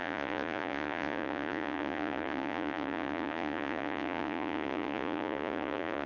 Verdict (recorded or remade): remade